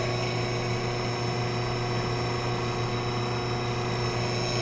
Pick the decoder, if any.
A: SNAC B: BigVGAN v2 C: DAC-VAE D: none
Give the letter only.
D